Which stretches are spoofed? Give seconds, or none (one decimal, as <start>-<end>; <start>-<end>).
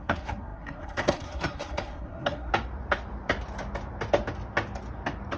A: 0.0-2.5